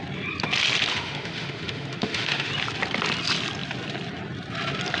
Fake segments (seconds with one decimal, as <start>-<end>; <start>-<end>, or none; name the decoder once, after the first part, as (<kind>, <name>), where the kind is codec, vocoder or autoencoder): 0.9-2.5 (autoencoder, DAC-VAE)